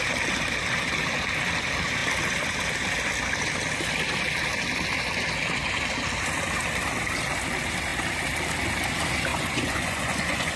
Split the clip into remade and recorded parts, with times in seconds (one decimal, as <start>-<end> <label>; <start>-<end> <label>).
0.0-9.3 recorded; 9.3-10.6 remade